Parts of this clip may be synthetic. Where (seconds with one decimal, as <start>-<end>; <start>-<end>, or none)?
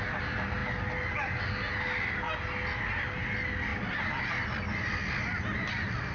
none